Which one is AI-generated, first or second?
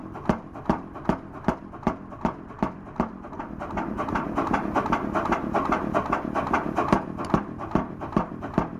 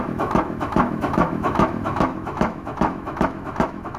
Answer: second